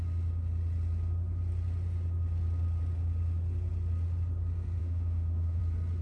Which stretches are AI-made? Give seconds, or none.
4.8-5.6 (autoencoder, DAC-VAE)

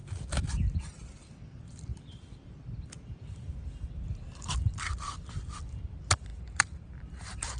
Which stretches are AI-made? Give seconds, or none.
0.8-7.6 (vocoder, BigVGAN v2)